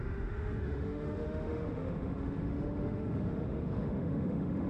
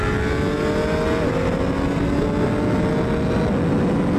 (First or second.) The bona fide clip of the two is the second